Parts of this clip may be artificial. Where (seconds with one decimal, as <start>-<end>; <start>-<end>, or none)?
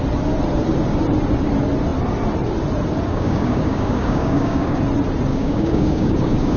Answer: 3.1-4.8; 5.3-6.6